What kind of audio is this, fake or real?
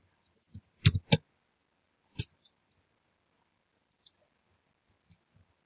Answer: real